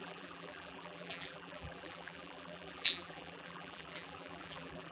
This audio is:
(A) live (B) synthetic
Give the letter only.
B